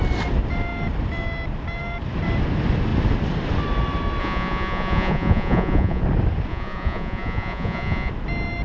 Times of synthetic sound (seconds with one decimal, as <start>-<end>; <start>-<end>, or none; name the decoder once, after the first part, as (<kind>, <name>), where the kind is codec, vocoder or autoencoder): 4.2-6.0 (vocoder, Vocos); 6.5-8.1